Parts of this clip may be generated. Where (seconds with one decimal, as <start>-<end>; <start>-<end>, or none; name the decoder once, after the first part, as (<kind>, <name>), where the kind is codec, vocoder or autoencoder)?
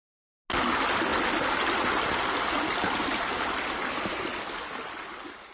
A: none